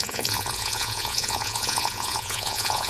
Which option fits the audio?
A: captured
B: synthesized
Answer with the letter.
B